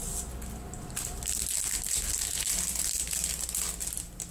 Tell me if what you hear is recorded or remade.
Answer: recorded